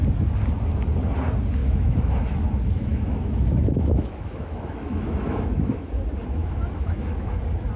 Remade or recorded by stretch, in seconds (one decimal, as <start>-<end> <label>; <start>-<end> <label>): 0.0-1.6 recorded; 1.6-2.1 remade; 2.1-2.9 recorded; 2.9-5.9 remade; 5.9-6.4 recorded; 6.4-7.3 remade; 7.3-7.8 recorded